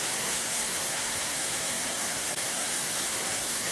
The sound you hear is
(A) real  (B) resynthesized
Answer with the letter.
B